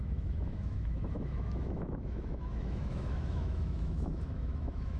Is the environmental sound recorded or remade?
remade